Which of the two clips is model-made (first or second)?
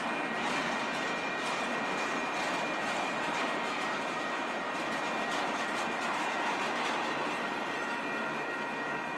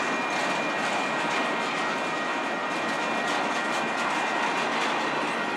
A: first